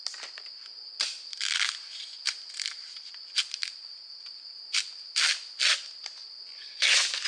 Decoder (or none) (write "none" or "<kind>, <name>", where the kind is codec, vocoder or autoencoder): none